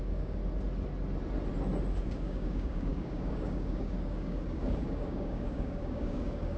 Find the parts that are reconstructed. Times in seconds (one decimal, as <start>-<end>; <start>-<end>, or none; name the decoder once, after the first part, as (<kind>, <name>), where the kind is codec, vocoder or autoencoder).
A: 0.0-0.4 (codec, DAC); 2.0-6.6